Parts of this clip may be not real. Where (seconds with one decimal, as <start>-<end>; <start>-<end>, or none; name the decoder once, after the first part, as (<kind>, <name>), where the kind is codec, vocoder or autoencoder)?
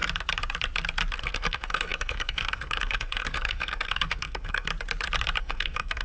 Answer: 1.2-4.7 (codec, SNAC); 5.4-6.0